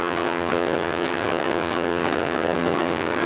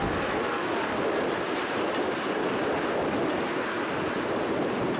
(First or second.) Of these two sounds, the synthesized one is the first